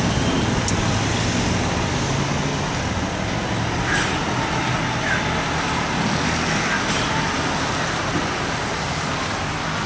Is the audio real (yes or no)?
yes